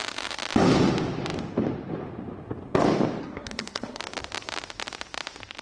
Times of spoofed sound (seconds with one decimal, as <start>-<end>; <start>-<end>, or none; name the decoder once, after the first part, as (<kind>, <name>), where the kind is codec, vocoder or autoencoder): 3.2-4.0 (codec, SNAC)